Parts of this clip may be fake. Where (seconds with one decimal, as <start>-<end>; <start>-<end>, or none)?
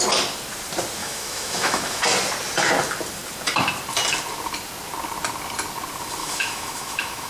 1.0-2.0; 6.2-7.3